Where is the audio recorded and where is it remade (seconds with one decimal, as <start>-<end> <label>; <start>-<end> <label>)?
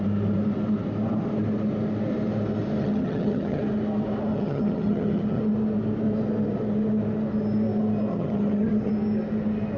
0.0-2.8 recorded; 2.8-3.6 remade; 3.6-4.3 recorded; 4.3-5.4 remade; 5.4-8.1 recorded; 8.1-8.9 remade; 8.9-9.8 recorded